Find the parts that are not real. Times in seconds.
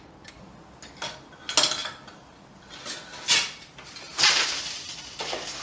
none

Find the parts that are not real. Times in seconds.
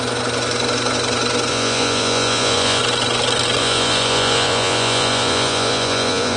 1.5-2.8; 3.6-6.4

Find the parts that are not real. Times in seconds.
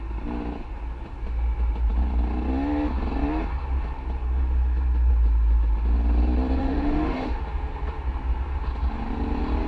6.6-7.4